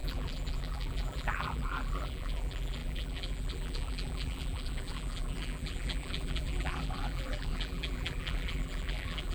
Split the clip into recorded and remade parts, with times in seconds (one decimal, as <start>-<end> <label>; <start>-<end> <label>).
0.0-9.3 remade